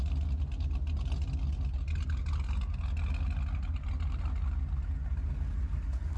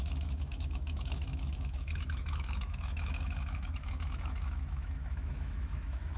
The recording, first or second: first